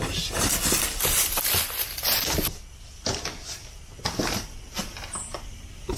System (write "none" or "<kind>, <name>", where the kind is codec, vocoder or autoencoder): none